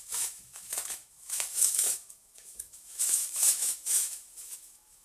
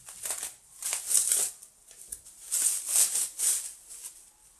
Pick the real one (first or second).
second